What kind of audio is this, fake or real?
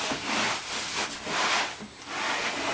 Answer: real